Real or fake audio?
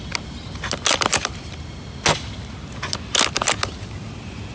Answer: real